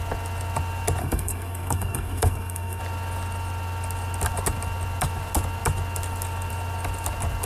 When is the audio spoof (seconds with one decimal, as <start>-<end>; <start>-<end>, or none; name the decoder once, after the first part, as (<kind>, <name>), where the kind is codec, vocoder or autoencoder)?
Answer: 1.0-2.8 (codec, SNAC)